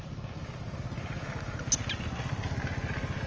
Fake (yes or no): no